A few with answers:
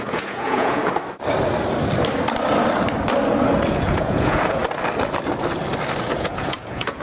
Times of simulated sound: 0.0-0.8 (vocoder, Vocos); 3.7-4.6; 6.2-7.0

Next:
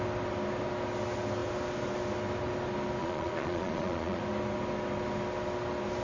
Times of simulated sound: 3.0-4.2 (vocoder, Vocos)

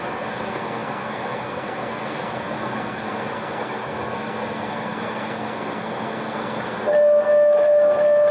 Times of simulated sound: 0.0-8.3 (codec, SNAC)

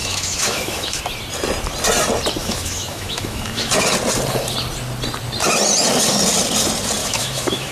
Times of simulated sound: 0.0-1.0 (autoencoder, DAC-VAE); 2.4-3.7; 7.0-7.7

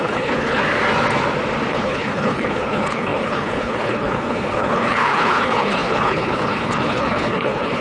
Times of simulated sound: 0.0-0.6 (codec, HILCodec); 1.7-7.8